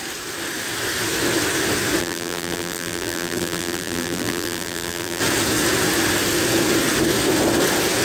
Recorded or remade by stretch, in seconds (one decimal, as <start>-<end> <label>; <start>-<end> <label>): 0.0-2.0 recorded; 2.0-5.2 remade; 5.2-8.0 recorded